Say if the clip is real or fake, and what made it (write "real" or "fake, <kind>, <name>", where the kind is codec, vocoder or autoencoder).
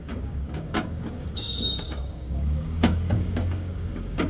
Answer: fake, codec, DAC